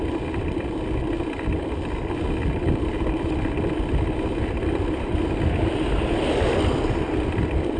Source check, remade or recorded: recorded